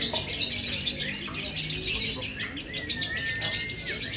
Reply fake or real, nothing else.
real